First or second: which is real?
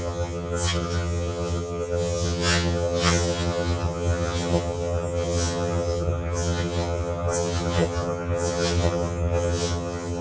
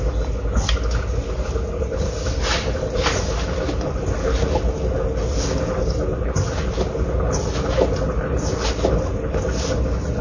second